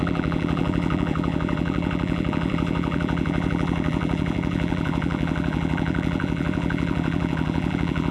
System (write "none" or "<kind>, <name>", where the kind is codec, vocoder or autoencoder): vocoder, BigVGAN v2